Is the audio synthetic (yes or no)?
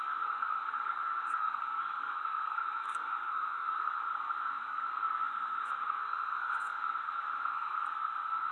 yes